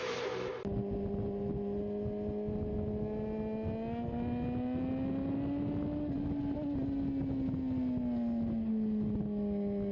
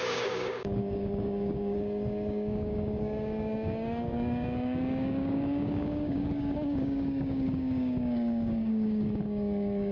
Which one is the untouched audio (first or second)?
first